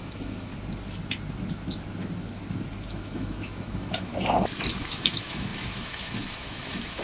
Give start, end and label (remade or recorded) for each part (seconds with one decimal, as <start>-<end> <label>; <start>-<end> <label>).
0.0-0.5 remade; 0.5-2.9 recorded; 2.9-4.1 remade; 4.1-4.8 recorded; 4.8-7.0 remade